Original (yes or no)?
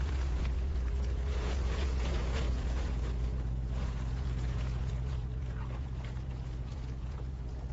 no